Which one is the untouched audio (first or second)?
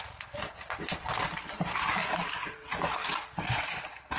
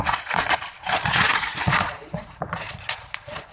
first